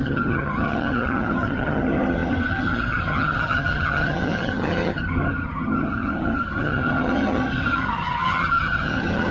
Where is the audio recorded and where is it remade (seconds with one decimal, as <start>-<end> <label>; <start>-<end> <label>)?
0.0-9.3 remade